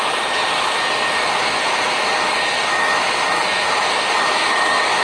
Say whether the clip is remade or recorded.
recorded